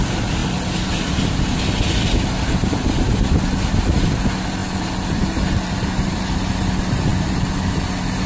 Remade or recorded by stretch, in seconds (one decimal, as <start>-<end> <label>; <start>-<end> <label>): 0.0-8.3 recorded